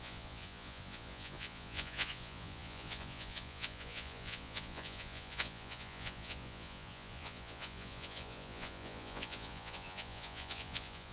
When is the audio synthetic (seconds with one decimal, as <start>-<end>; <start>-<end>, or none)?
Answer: 0.0-11.1